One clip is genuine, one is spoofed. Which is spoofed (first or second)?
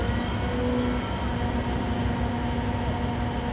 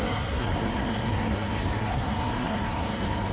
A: second